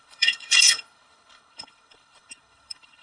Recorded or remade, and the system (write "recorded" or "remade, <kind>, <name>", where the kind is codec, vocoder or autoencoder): remade, codec, HILCodec